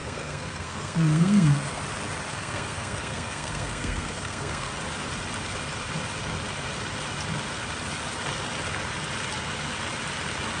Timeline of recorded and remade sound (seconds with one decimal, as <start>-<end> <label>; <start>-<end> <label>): 0.0-1.8 remade; 1.8-2.3 recorded; 2.3-4.7 remade; 4.7-10.6 recorded